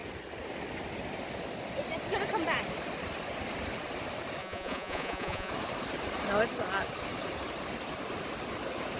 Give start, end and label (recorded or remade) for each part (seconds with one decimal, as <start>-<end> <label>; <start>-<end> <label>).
0.0-4.4 recorded; 4.4-5.5 remade; 5.5-9.0 recorded